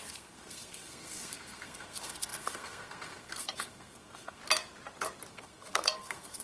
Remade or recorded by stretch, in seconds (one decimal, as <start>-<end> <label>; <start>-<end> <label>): 0.0-4.4 remade; 4.4-5.3 recorded; 5.3-6.4 remade